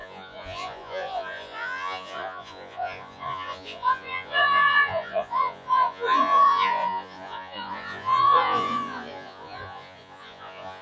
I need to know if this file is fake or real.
fake